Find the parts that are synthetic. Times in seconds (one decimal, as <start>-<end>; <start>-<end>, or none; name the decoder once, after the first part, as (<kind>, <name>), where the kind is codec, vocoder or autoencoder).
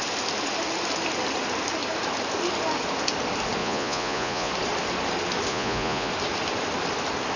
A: 3.6-4.5 (vocoder, Vocos); 5.5-6.1